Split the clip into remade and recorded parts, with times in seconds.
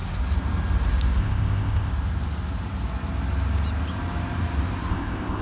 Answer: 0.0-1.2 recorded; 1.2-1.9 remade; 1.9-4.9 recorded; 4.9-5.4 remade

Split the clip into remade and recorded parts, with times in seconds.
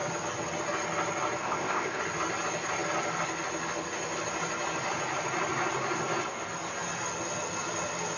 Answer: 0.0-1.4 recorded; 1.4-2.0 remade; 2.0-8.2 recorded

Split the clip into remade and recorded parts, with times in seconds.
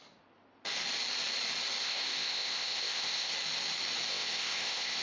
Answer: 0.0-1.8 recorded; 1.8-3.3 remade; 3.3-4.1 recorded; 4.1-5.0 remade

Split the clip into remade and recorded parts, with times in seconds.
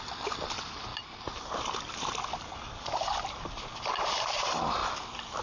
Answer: 0.0-5.4 recorded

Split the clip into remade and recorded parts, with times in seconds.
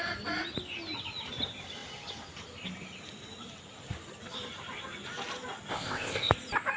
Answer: 0.0-5.7 recorded; 5.7-6.3 remade; 6.3-6.8 recorded